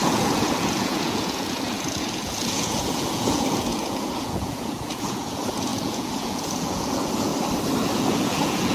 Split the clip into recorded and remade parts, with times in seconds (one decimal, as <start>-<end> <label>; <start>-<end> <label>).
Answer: 0.0-7.3 remade; 7.3-8.0 recorded; 8.0-8.7 remade